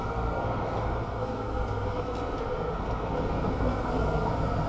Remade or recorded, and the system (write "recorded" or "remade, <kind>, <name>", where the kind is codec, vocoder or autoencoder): remade, codec, SNAC